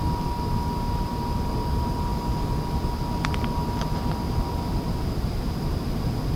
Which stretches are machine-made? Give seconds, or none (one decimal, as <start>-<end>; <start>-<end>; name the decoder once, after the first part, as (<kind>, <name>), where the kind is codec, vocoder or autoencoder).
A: none